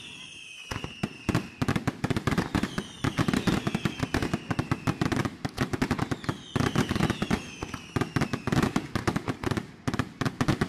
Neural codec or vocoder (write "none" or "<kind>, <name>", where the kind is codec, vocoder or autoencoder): none